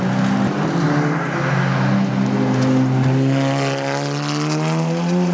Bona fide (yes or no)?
yes